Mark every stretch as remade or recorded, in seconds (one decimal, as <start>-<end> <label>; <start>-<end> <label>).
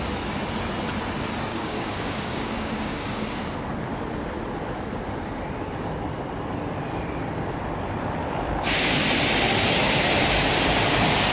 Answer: 0.0-1.5 recorded; 1.5-3.4 remade; 3.4-11.3 recorded